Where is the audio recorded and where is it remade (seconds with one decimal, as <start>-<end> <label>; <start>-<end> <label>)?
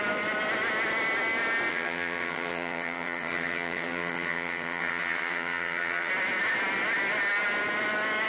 0.0-1.7 recorded; 1.7-6.1 remade; 6.1-8.3 recorded